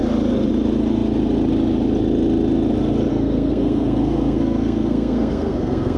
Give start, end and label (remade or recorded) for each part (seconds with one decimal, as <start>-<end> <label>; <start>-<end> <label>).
0.0-3.1 recorded; 3.1-6.0 remade